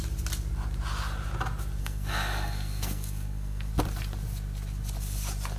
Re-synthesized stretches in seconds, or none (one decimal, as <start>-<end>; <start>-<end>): 1.8-3.7